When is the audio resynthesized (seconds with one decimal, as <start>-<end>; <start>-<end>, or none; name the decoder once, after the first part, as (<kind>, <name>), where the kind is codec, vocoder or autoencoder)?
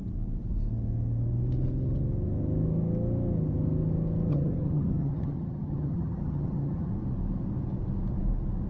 4.3-6.9 (vocoder, HiFi-GAN)